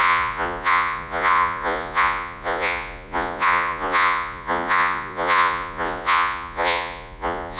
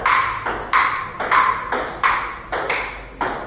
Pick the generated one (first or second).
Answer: first